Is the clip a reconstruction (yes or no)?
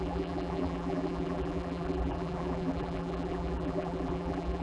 yes